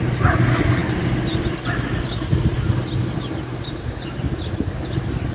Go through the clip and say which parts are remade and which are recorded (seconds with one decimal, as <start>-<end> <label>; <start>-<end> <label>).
0.0-5.3 recorded